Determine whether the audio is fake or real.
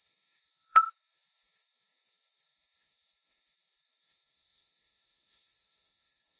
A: fake